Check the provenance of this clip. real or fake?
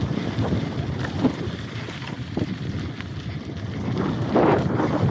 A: real